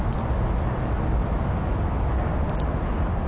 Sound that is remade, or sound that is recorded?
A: recorded